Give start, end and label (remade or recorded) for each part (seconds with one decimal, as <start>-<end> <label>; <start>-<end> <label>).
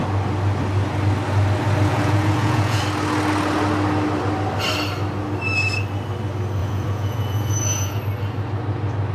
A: 0.0-1.9 recorded; 1.9-2.8 remade; 2.8-6.6 recorded; 6.6-8.0 remade; 8.0-9.1 recorded